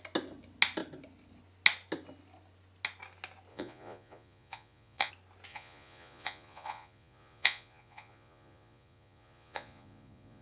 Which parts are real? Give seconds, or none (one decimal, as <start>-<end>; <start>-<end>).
0.0-3.5; 5.1-5.5